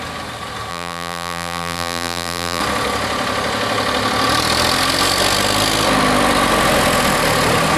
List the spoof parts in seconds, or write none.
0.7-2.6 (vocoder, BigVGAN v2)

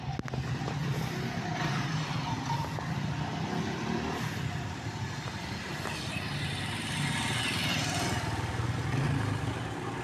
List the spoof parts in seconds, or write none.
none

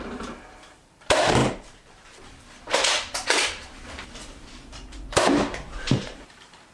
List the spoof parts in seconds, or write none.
0.0-6.7 (vocoder, BigVGAN v2)